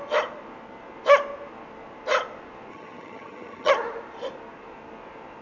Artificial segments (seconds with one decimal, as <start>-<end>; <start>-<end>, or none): 2.7-3.7